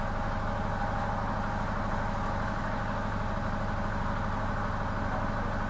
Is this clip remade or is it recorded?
recorded